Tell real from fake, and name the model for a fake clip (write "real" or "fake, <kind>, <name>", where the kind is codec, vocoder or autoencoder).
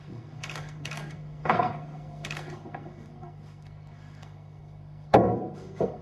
fake, codec, SNAC